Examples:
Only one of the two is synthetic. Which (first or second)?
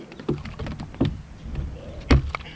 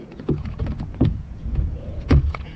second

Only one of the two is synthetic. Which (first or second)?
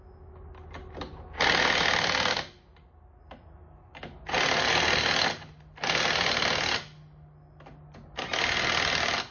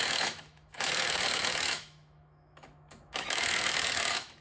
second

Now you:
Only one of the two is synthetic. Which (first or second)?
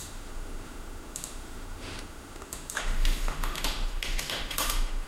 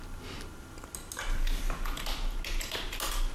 first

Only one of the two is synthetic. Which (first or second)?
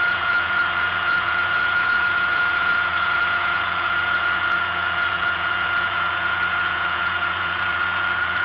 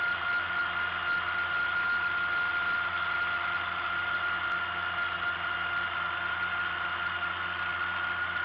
first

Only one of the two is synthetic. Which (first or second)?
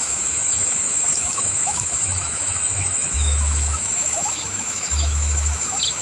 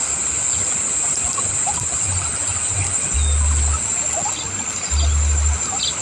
first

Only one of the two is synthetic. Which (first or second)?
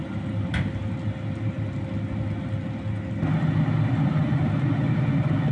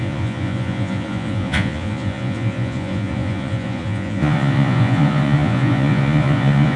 second